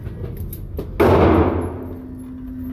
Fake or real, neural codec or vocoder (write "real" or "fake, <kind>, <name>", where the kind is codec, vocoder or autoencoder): real